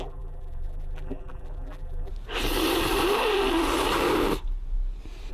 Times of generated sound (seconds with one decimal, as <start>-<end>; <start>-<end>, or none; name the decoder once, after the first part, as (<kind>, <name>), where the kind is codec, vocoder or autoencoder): 0.0-2.1 (vocoder, BigVGAN v2)

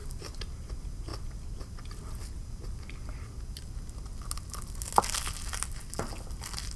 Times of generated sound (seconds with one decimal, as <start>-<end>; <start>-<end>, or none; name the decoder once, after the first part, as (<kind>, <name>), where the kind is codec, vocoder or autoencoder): none

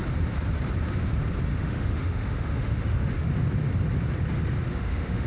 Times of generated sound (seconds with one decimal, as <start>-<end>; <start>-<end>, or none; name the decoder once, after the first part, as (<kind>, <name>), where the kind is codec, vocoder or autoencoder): 1.5-3.3 (autoencoder, DAC-VAE); 4.7-5.3

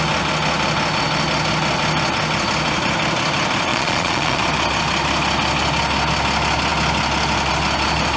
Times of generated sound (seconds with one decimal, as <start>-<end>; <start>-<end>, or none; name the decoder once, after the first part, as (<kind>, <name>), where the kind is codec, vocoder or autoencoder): 3.7-4.4 (vocoder, Vocos)

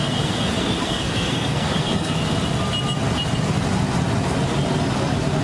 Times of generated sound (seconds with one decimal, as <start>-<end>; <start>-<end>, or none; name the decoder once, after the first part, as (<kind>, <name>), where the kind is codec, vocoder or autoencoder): 0.0-2.3 (codec, SNAC)

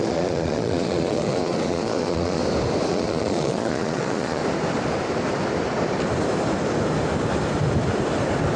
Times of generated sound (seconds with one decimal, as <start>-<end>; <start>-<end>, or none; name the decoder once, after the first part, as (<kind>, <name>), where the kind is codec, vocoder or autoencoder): 0.0-2.4 (vocoder, Vocos); 2.9-4.4